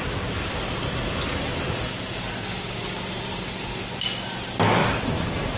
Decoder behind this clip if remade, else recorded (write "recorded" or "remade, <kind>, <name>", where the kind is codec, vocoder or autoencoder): recorded